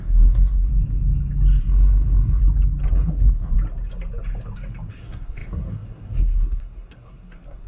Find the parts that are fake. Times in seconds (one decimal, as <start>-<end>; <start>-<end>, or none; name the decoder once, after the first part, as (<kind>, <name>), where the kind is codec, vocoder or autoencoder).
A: 0.0-0.7 (codec, SNAC); 1.6-2.4; 2.9-3.5; 4.9-7.7